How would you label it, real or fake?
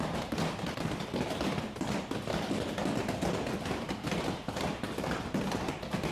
real